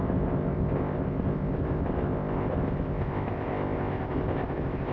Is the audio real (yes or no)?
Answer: no